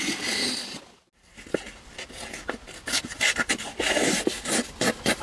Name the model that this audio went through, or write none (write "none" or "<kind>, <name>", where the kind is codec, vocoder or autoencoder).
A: none